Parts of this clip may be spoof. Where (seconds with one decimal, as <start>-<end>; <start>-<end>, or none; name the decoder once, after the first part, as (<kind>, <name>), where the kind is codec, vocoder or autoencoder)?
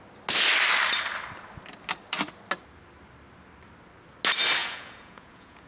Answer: 4.6-5.7 (vocoder, Vocos)